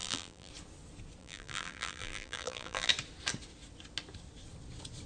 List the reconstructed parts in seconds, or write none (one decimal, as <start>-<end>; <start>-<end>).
0.0-0.5; 1.2-2.9